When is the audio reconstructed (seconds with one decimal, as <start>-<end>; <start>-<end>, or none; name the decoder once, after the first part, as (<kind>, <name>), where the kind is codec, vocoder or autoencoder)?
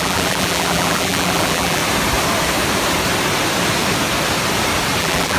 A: 0.0-1.8 (vocoder, BigVGAN v2); 5.0-5.4